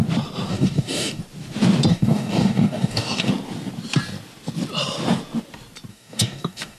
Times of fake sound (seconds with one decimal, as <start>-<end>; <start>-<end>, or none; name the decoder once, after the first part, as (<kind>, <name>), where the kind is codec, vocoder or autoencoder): 0.5-1.2 (codec, DAC); 1.9-3.3; 5.9-6.8